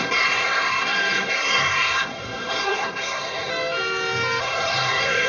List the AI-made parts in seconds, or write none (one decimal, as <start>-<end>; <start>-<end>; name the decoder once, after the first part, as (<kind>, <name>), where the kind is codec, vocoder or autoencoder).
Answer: 0.0-3.5 (codec, SNAC); 4.4-5.3